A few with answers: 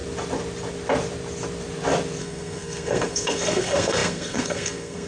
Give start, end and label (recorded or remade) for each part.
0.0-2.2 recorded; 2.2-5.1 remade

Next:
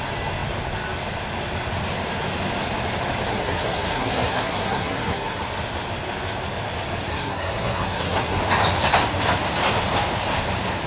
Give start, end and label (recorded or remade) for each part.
0.0-3.3 recorded; 3.3-5.4 remade; 5.4-7.1 recorded; 7.1-8.4 remade; 8.4-10.9 recorded

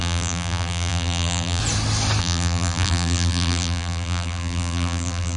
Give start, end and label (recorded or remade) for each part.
0.0-1.6 remade; 1.6-2.2 recorded; 2.2-5.4 remade

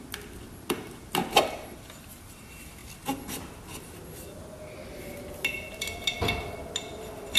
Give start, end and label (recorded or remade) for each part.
0.0-1.2 recorded; 1.2-1.9 remade; 1.9-7.4 recorded

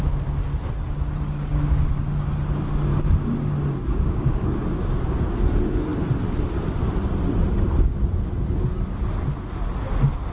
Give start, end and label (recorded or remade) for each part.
0.0-2.9 recorded; 2.9-5.3 remade; 5.3-10.3 recorded

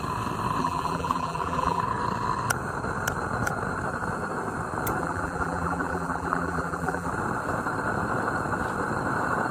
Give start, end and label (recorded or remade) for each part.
0.0-0.6 recorded; 0.6-1.8 remade; 1.8-5.0 recorded; 5.0-7.1 remade; 7.1-9.5 recorded